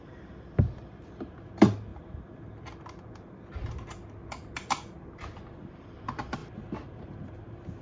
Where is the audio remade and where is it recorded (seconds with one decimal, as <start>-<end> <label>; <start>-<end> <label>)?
0.0-1.9 remade; 1.9-5.7 recorded; 5.7-7.8 remade